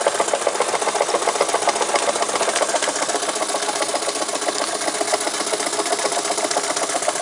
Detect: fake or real real